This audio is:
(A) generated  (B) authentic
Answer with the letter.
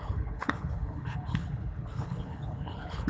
A